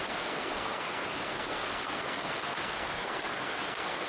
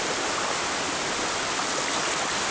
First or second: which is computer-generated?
first